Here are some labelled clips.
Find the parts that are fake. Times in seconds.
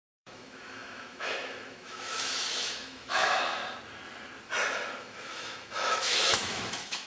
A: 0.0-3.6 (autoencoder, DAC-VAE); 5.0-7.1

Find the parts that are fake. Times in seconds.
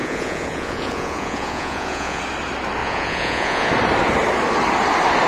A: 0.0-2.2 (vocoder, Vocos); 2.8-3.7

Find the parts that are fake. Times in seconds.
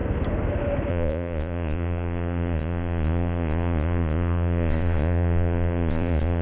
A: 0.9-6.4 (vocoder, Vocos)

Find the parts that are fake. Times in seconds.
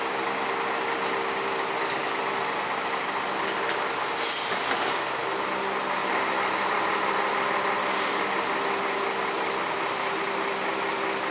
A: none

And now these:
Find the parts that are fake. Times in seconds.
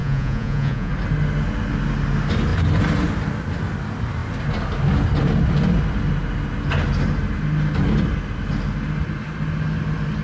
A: 0.0-0.9 (vocoder, Vocos)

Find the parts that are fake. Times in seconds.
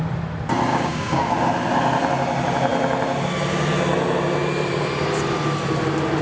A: 0.7-1.3 (codec, DAC)